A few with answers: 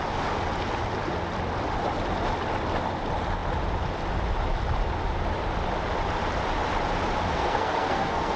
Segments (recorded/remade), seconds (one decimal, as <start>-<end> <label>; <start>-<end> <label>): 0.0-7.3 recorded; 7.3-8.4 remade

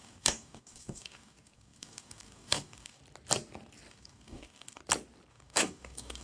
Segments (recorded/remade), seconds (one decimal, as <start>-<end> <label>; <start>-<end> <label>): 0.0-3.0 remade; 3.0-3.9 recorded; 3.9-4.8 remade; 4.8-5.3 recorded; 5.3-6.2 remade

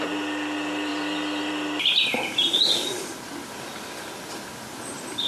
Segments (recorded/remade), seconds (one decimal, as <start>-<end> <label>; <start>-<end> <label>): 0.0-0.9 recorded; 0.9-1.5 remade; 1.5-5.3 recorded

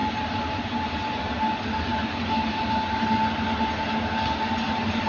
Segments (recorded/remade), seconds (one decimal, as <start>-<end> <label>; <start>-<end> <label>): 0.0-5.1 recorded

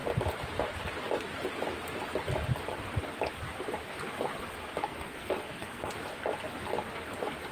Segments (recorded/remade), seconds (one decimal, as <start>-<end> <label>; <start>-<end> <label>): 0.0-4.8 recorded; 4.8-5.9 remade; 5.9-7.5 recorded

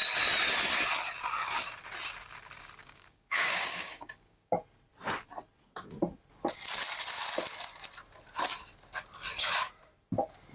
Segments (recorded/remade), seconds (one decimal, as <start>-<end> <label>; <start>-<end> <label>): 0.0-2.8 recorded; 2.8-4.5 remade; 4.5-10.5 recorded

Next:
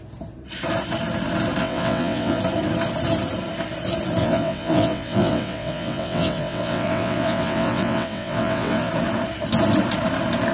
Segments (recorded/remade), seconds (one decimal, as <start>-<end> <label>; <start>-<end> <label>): 0.0-1.6 recorded; 1.6-2.4 remade; 2.4-4.2 recorded; 4.2-8.9 remade; 8.9-10.5 recorded